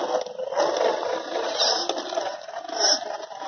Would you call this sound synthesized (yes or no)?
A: no